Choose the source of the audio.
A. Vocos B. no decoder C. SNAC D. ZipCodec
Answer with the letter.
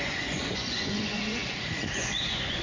A